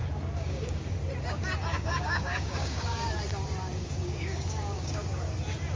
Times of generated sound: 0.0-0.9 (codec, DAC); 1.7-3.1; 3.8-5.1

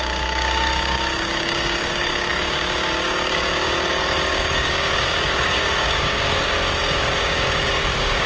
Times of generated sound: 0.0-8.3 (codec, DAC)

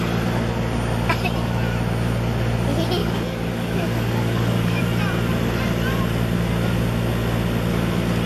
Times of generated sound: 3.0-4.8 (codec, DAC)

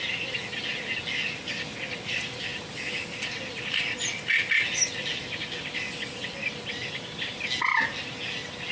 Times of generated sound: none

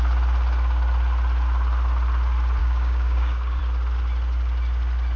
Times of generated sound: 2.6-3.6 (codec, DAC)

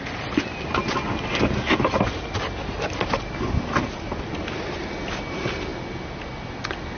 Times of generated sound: none

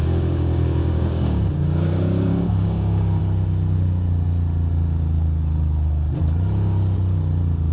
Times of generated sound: 0.0-3.2 (codec, DAC)

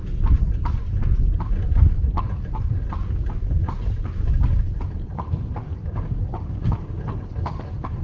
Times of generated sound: 5.8-7.0 (codec, DAC)